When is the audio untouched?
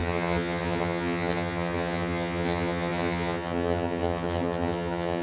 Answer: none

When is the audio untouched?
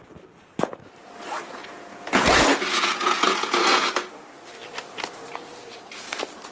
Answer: 0.0-1.6; 3.9-6.5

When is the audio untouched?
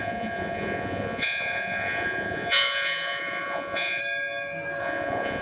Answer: 4.0-4.8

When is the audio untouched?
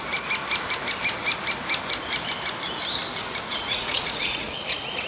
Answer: 0.0-3.2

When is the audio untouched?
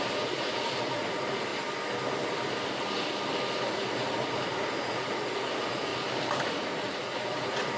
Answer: 1.5-3.6; 5.9-6.5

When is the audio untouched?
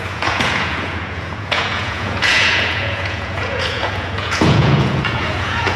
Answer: none